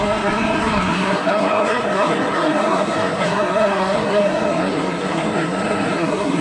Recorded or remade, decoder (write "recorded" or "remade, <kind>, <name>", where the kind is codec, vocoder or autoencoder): remade, codec, SNAC